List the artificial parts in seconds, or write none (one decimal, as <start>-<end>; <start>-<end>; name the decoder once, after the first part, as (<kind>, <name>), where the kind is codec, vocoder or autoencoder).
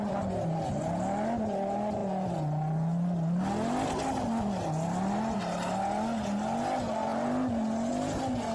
none